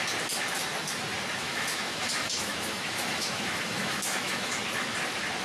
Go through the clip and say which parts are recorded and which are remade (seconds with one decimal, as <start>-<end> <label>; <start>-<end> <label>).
0.0-1.4 recorded; 1.4-4.6 remade; 4.6-5.4 recorded